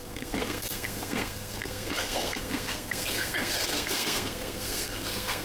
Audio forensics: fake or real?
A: fake